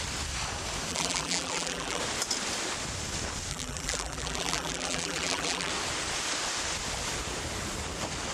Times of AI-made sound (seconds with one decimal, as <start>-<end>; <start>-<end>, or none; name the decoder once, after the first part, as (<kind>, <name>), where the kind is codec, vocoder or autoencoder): 0.9-2.0 (vocoder, BigVGAN v2); 3.5-5.7